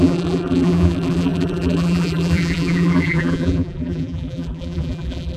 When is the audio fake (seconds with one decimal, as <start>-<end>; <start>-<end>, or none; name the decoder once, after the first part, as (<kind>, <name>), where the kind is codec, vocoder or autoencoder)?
0.0-5.4 (vocoder, BigVGAN v2)